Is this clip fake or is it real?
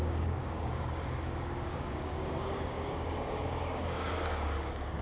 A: fake